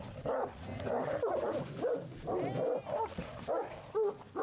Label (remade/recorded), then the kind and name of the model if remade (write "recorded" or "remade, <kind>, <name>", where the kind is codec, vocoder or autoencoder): recorded